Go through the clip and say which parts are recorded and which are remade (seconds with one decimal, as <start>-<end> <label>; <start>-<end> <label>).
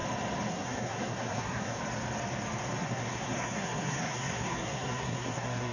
0.0-0.5 recorded; 0.5-1.8 remade; 1.8-2.8 recorded; 2.8-5.7 remade